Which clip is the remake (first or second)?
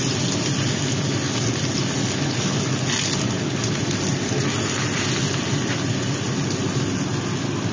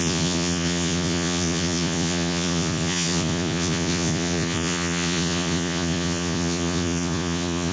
second